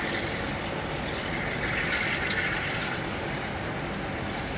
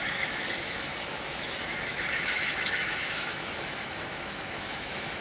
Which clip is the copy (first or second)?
second